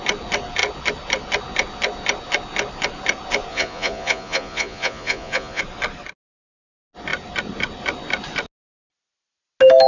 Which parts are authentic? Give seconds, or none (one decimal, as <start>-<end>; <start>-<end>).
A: 0.0-3.5; 5.6-9.9